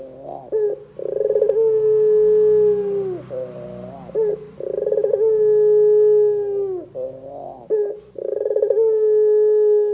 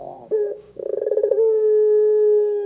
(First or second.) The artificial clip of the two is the second